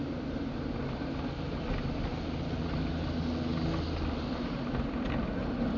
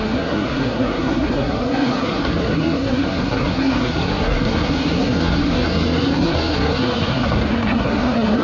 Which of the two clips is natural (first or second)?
first